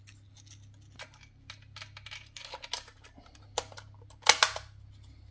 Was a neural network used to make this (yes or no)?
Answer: no